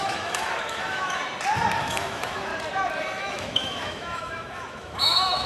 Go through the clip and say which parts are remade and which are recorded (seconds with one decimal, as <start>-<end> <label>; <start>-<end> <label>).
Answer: 0.0-1.2 remade; 1.2-1.8 recorded; 1.8-2.5 remade; 2.5-3.0 recorded; 3.0-5.5 remade